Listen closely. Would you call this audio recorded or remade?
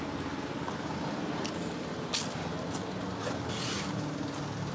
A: recorded